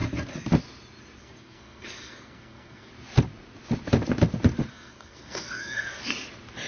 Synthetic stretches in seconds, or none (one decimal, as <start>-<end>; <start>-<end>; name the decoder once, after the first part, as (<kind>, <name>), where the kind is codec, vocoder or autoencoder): 1.2-2.9 (codec, SNAC); 4.7-6.0